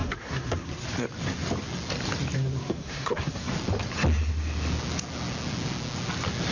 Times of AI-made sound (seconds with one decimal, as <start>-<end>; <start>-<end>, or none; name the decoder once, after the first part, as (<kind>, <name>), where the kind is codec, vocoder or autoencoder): 0.0-0.7 (codec, SNAC); 2.6-3.5